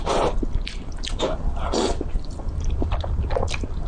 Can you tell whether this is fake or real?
real